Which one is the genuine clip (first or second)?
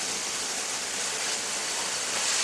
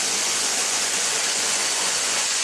first